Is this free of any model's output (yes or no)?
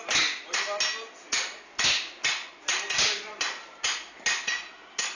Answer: yes